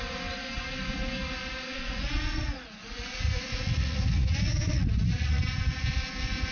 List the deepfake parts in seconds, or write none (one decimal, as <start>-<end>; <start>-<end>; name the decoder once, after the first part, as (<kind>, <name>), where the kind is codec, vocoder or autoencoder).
1.7-5.4 (vocoder, Vocos)